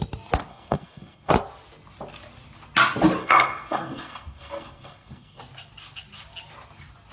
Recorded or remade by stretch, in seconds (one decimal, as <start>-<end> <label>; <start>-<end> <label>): 0.0-0.5 recorded; 0.5-1.3 remade; 1.3-3.2 recorded; 3.2-5.4 remade; 5.4-7.1 recorded